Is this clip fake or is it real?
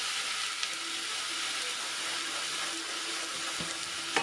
real